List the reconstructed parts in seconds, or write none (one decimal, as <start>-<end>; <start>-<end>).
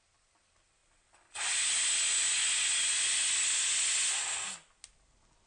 none